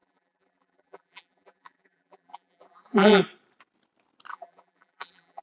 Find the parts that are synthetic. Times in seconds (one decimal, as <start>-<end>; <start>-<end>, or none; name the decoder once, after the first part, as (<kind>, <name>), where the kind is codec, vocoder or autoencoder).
0.0-3.2 (vocoder, BigVGAN v2); 4.3-5.4